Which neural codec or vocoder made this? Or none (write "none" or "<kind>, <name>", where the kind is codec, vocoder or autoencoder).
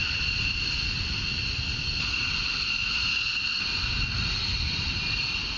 none